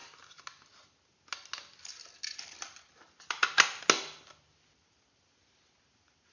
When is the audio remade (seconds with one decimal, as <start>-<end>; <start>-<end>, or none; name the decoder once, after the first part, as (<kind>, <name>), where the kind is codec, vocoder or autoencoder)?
none